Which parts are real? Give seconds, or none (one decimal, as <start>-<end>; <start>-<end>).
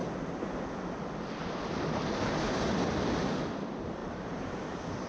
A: 0.0-4.0; 4.5-5.1